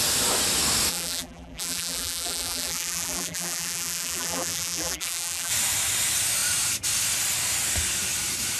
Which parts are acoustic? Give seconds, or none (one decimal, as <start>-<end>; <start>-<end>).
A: 0.0-0.9; 5.5-8.6